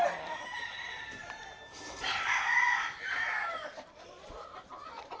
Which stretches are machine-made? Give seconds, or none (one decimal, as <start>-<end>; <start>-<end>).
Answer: 0.0-1.6; 4.1-5.2